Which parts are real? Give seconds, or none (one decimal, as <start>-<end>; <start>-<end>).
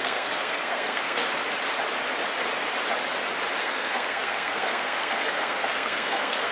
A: 1.2-3.6